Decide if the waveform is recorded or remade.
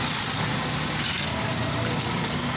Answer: recorded